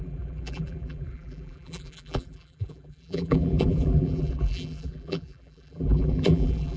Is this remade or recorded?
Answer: remade